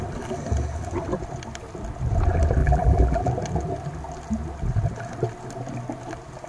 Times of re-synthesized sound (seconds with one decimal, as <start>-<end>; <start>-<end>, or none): 2.6-3.3